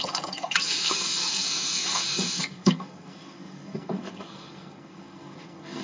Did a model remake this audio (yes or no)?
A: yes